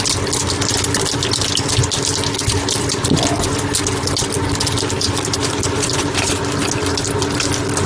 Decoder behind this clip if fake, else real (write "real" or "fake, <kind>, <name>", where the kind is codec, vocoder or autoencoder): real